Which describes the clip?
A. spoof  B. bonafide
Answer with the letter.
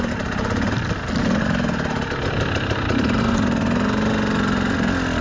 B